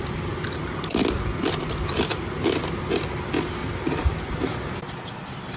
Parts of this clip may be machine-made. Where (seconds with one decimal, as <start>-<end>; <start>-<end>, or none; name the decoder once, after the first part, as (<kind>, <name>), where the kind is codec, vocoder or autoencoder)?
3.6-4.8 (vocoder, BigVGAN v2)